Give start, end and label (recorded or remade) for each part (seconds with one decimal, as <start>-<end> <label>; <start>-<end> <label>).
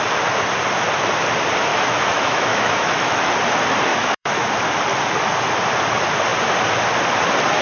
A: 0.0-1.7 recorded; 1.7-3.3 remade; 3.3-3.9 recorded; 3.9-4.5 remade; 4.5-7.6 recorded